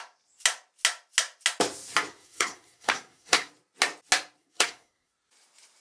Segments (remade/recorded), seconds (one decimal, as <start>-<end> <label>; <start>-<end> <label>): 0.0-2.1 recorded; 2.1-3.5 remade; 3.5-4.4 recorded; 4.4-5.1 remade; 5.1-5.8 recorded